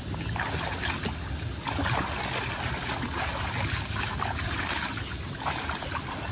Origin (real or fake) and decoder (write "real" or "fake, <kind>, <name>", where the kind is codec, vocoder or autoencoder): real